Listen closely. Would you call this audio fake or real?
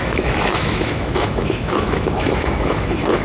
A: fake